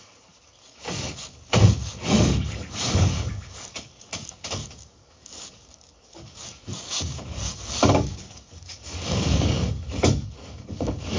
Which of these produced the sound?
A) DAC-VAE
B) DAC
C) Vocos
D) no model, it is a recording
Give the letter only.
B